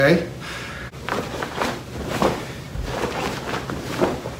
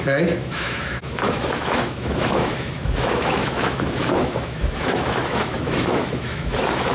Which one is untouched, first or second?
first